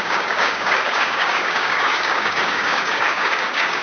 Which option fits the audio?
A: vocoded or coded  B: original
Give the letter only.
A